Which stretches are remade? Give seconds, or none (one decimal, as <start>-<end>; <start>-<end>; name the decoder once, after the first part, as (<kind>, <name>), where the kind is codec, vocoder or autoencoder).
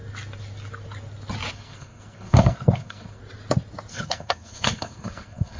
1.5-3.2 (codec, SNAC); 3.9-5.6